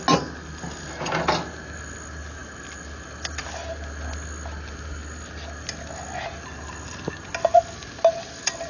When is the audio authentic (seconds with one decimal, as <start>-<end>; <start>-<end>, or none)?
0.0-8.7